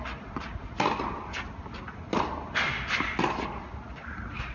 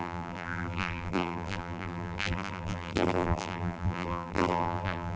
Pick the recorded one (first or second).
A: first